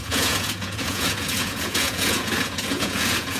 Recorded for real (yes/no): no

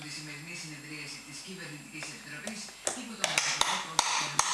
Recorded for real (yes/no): yes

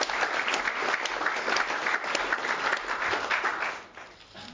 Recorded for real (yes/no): yes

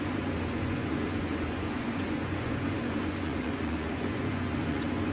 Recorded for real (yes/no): no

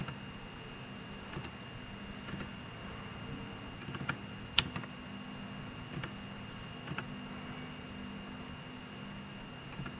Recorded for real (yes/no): yes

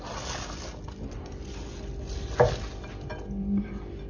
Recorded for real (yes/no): yes